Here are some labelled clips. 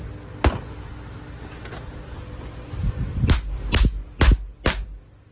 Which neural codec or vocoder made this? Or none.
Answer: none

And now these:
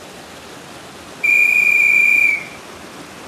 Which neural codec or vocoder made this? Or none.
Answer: none